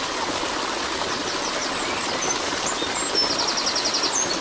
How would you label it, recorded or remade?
recorded